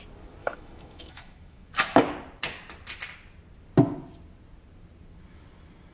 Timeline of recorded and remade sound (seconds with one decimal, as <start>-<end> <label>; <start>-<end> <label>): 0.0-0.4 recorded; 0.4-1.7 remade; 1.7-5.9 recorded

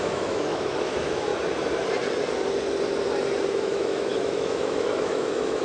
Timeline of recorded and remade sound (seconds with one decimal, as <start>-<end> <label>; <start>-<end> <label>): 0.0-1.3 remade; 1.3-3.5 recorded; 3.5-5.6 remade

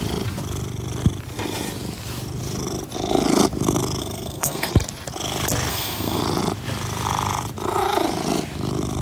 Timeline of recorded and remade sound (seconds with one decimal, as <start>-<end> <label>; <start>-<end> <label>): 0.0-4.0 recorded; 4.0-4.7 remade; 4.7-5.7 recorded; 5.7-6.2 remade; 6.2-9.0 recorded

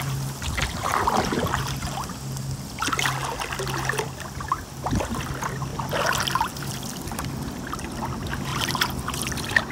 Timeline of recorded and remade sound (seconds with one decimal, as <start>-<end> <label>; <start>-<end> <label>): 0.0-0.9 recorded; 0.9-1.8 remade; 1.8-5.7 recorded; 5.7-7.6 remade; 7.6-8.5 recorded; 8.5-9.7 remade

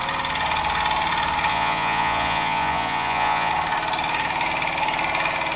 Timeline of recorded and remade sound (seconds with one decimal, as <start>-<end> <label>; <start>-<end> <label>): 0.0-1.5 recorded; 1.5-3.5 remade; 3.5-5.6 recorded

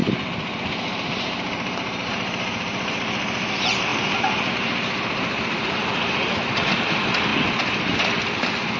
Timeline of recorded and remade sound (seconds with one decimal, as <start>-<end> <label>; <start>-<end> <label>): 0.0-0.6 recorded; 0.6-7.3 remade; 7.3-8.8 recorded

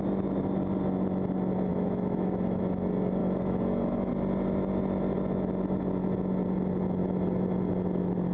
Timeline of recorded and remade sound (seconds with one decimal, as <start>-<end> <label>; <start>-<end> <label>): 0.0-1.7 recorded; 1.7-2.6 remade; 2.6-3.2 recorded; 3.2-4.1 remade; 4.1-8.3 recorded

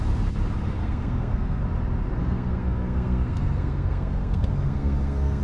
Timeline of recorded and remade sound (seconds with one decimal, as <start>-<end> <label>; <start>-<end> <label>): 0.0-0.8 recorded; 0.8-1.6 remade; 1.6-2.2 recorded; 2.2-5.4 remade